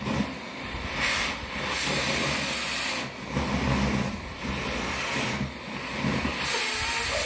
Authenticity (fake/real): real